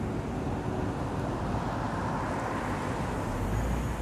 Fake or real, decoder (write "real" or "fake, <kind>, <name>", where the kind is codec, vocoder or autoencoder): real